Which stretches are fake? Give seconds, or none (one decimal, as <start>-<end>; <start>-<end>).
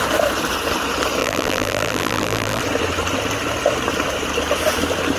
1.2-2.6